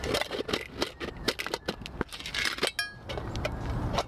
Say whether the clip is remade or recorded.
recorded